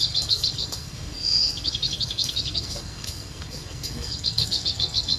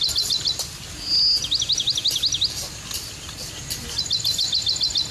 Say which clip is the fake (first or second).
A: first